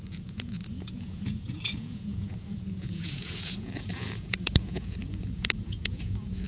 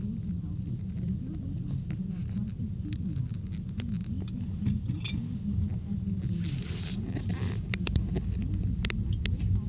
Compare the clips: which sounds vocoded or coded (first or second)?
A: first